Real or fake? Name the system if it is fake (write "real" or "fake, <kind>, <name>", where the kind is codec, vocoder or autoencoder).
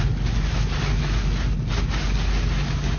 real